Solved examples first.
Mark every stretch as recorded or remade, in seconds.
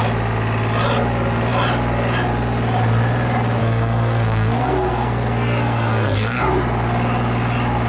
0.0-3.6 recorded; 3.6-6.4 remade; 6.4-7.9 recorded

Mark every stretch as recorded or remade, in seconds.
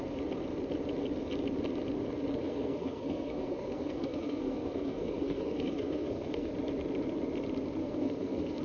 0.0-2.4 recorded; 2.4-6.5 remade; 6.5-7.8 recorded; 7.8-8.6 remade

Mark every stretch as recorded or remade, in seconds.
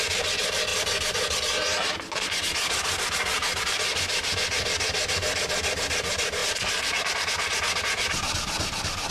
0.0-9.1 recorded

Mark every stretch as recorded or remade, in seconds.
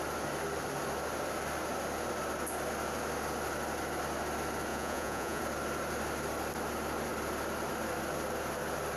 0.0-4.7 recorded; 4.7-5.4 remade; 5.4-9.0 recorded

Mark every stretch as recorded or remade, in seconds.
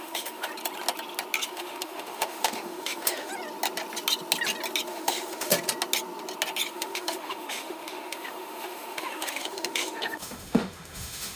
0.0-0.5 remade; 0.5-1.5 recorded; 1.5-3.3 remade; 3.3-4.9 recorded; 4.9-5.5 remade; 5.5-6.7 recorded; 6.7-11.4 remade